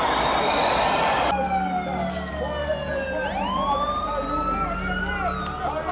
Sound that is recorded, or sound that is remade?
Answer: recorded